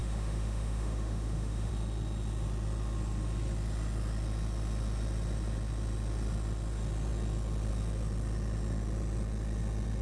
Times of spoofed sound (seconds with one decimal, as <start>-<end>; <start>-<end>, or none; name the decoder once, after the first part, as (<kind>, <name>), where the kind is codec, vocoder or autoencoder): 0.0-1.7 (autoencoder, DAC-VAE)